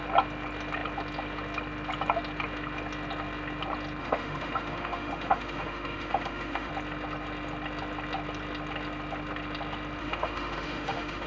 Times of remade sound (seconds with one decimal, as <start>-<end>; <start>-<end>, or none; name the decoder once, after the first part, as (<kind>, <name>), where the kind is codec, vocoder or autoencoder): 4.0-6.7 (autoencoder, DAC-VAE); 10.0-11.3